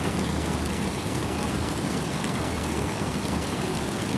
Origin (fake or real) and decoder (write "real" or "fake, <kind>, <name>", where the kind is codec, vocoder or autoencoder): fake, codec, SNAC